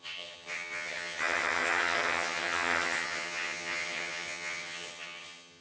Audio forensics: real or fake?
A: fake